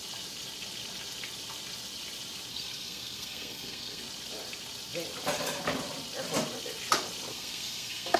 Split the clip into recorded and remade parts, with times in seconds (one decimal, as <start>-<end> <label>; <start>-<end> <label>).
0.0-2.5 recorded; 2.5-4.0 remade; 4.0-7.3 recorded; 7.3-8.2 remade